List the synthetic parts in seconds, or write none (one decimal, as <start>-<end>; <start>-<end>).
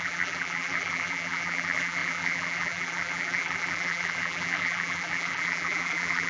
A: 0.0-6.3